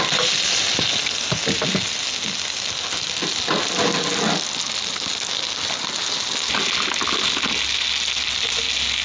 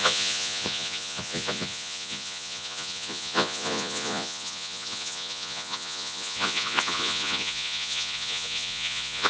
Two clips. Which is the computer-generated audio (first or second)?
second